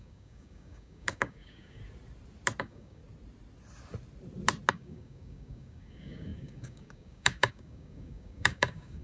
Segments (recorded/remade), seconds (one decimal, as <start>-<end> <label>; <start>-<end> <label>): 0.0-1.8 remade; 1.8-2.6 recorded; 2.6-3.0 remade; 3.0-4.7 recorded; 4.7-9.0 remade